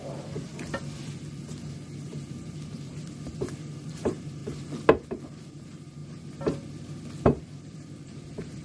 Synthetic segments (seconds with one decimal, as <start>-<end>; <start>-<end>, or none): 0.0-0.5; 1.0-4.4; 5.2-6.0; 7.4-8.6